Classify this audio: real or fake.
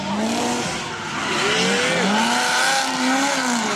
real